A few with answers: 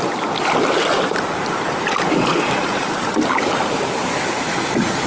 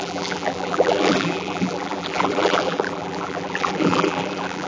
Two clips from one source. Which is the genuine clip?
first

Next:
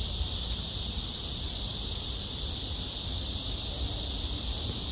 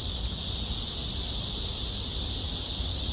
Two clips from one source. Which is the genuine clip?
second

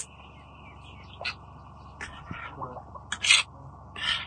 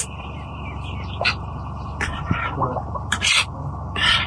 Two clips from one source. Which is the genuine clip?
first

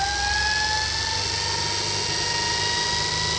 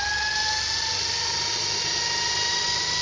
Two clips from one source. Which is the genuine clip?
first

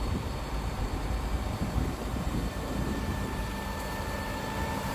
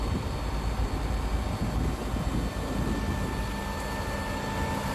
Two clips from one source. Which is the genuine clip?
second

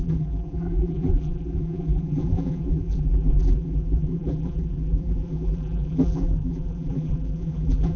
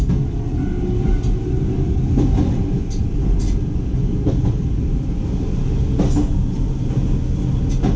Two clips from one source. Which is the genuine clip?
second